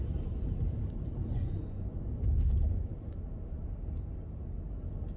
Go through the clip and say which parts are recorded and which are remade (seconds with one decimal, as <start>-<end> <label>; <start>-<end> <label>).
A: 0.0-1.2 recorded; 1.2-2.1 remade; 2.1-5.2 recorded